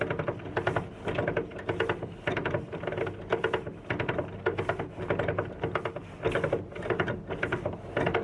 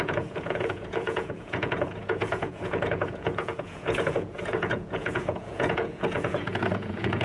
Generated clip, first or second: second